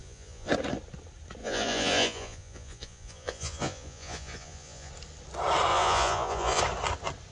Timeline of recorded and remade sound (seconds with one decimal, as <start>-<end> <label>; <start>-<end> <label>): 0.0-0.5 remade; 0.5-1.4 recorded; 1.4-4.9 remade; 4.9-5.7 recorded; 5.7-6.6 remade; 6.6-7.3 recorded